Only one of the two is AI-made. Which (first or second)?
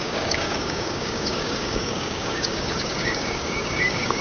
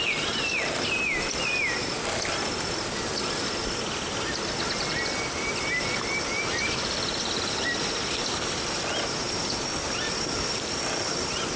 first